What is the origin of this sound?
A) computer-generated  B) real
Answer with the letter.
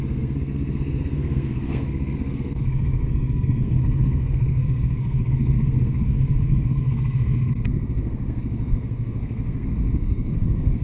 A